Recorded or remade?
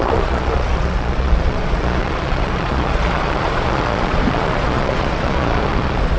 remade